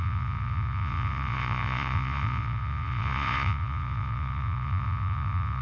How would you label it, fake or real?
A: fake